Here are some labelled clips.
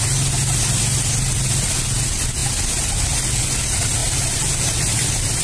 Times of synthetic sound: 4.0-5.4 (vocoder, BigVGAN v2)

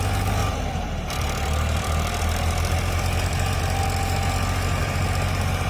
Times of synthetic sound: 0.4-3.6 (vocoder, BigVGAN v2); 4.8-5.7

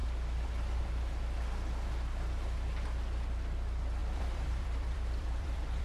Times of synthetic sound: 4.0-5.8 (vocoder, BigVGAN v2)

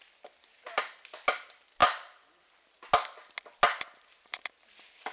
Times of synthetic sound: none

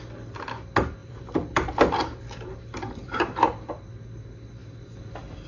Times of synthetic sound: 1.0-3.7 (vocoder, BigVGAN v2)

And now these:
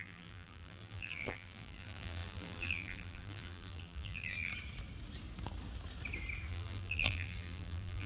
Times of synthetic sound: 0.0-4.5 (vocoder, BigVGAN v2); 6.5-8.1

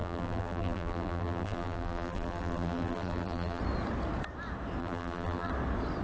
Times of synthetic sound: 0.0-3.6 (vocoder, BigVGAN v2); 4.8-5.5